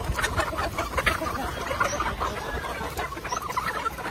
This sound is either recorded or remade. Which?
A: recorded